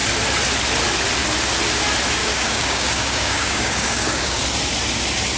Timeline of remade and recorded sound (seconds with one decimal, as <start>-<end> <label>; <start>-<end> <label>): 0.0-2.2 recorded; 2.2-4.4 remade; 4.4-5.4 recorded